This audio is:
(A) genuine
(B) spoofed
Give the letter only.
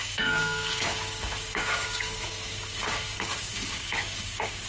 B